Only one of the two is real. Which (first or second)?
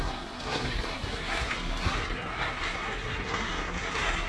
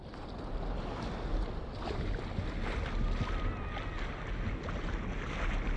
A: second